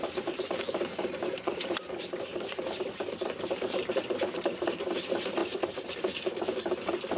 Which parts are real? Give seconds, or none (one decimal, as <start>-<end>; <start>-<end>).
none